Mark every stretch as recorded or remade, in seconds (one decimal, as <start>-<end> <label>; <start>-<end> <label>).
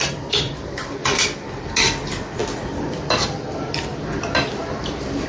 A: 0.0-3.9 remade; 3.9-4.5 recorded; 4.5-5.3 remade